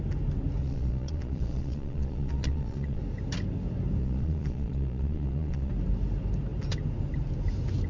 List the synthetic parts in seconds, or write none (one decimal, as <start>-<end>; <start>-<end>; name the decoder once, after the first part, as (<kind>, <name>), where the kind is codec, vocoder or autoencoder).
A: 0.6-3.0 (vocoder, Vocos); 4.0-5.7